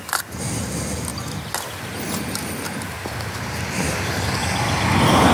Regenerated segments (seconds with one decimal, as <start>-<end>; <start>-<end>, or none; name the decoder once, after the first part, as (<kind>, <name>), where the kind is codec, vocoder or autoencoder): none